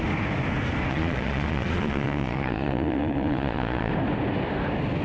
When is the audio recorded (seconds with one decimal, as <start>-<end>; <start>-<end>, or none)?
0.0-0.9; 3.9-5.0